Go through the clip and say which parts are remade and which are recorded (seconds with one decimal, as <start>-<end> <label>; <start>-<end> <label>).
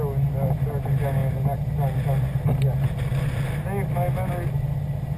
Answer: 0.0-5.2 recorded